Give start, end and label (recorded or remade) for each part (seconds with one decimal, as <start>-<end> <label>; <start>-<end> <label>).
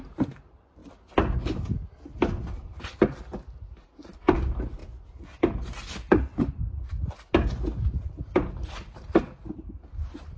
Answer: 0.0-0.8 remade; 0.8-4.0 recorded; 4.0-4.8 remade; 4.8-8.5 recorded; 8.5-10.4 remade